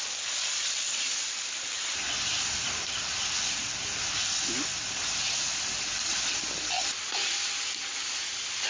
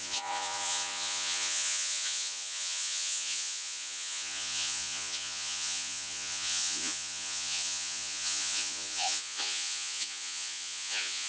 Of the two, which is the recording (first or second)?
first